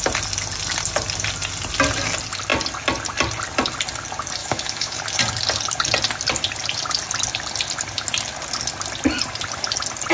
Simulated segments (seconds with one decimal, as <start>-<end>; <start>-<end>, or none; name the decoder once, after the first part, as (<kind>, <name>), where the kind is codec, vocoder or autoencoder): 4.4-5.0 (autoencoder, DAC-VAE)